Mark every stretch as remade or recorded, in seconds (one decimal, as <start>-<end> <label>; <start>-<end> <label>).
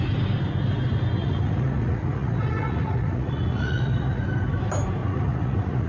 0.0-1.2 recorded; 1.2-4.2 remade; 4.2-5.0 recorded; 5.0-5.9 remade